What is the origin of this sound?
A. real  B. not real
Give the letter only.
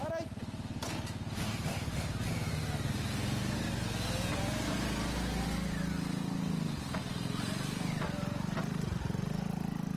A